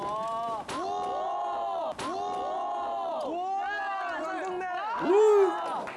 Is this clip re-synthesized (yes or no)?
no